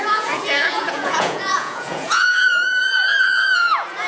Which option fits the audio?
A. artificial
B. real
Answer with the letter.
A